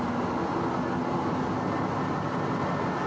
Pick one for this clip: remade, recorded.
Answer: recorded